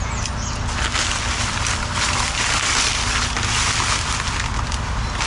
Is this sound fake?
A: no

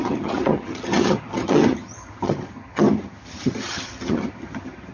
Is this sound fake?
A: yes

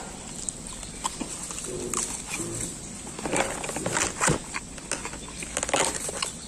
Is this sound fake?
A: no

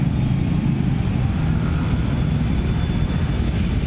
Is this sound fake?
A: no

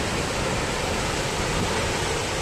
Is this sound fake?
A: no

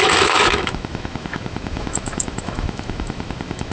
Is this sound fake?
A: yes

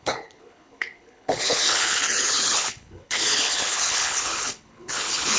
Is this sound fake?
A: yes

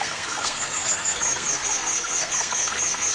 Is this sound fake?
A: yes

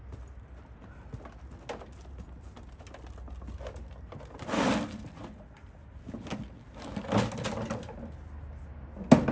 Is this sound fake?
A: no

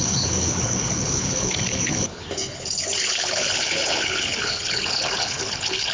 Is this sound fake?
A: yes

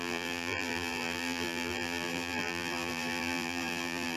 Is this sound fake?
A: yes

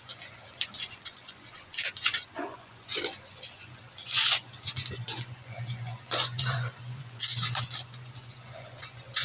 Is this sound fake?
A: yes